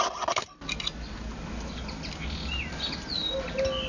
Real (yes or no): yes